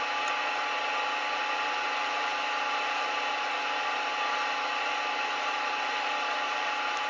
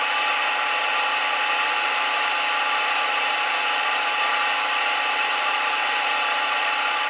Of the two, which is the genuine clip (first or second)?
first